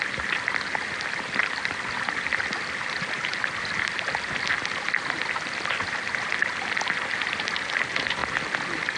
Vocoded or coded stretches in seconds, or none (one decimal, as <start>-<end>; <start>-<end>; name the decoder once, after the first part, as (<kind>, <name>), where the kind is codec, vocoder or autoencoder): none